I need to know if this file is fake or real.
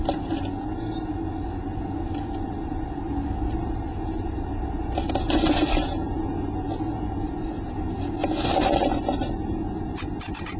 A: real